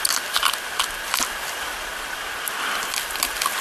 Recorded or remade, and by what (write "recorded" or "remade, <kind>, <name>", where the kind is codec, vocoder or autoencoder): recorded